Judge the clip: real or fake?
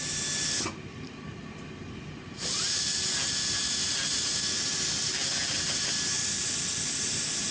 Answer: real